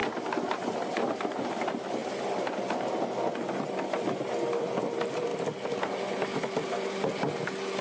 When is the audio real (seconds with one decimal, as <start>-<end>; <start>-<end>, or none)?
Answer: 2.0-4.8; 5.3-7.8